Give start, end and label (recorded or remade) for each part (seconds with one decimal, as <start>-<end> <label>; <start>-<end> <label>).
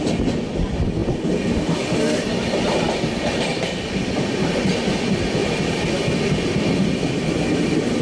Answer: 0.0-8.0 recorded